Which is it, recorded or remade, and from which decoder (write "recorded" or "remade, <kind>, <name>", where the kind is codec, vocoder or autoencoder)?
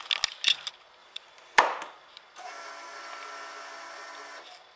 recorded